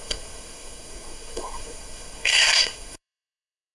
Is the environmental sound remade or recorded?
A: remade